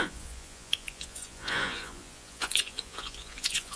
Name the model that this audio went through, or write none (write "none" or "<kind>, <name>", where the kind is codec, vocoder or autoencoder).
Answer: vocoder, Vocos